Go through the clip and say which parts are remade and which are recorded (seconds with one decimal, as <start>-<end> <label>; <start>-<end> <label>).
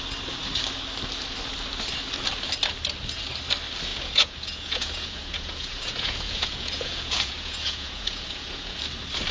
0.0-3.9 recorded; 3.9-8.8 remade; 8.8-9.3 recorded